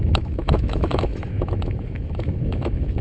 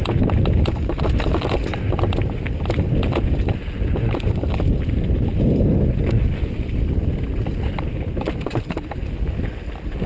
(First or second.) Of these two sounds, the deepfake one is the first